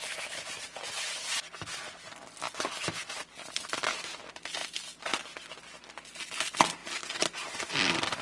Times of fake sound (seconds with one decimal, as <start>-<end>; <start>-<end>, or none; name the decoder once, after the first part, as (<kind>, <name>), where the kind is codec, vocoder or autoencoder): none